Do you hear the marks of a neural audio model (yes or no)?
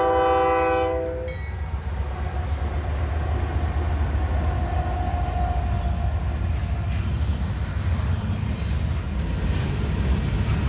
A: no